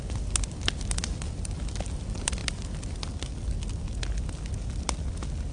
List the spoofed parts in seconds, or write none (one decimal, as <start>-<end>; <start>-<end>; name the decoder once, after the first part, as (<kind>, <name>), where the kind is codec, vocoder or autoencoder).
none